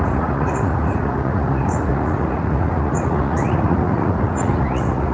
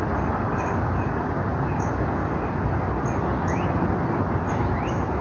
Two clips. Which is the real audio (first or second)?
second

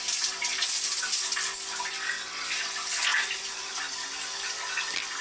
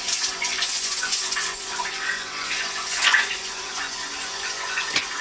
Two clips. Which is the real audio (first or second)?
first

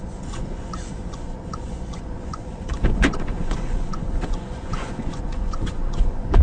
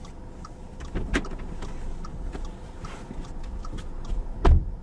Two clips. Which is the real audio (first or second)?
second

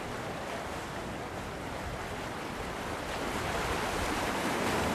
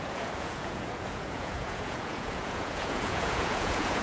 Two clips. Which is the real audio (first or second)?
first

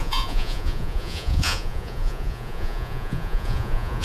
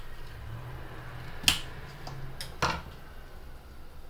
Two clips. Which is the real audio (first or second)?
second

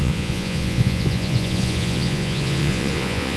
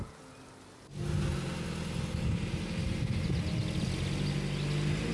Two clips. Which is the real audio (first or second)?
second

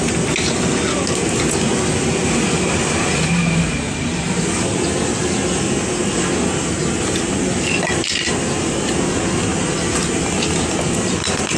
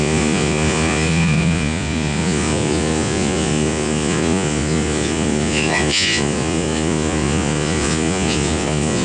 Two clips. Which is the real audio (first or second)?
first